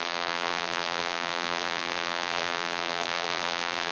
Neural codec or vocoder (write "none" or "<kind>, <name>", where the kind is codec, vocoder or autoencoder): vocoder, BigVGAN v2